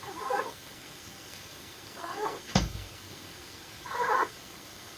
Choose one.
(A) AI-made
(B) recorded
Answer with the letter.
A